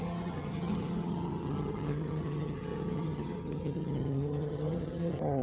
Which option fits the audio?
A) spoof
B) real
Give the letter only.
A